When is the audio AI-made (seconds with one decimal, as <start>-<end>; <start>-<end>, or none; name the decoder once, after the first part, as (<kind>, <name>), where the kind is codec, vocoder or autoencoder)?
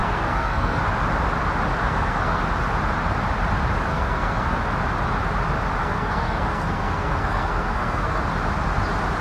0.0-0.8 (codec, SNAC); 1.8-2.4; 3.9-4.6; 5.8-8.2